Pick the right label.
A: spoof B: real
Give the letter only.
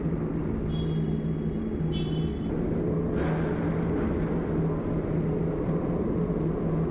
B